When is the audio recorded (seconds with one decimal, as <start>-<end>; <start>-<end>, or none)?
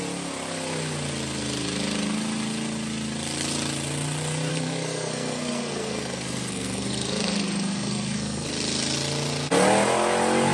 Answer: 0.0-4.5; 8.5-10.5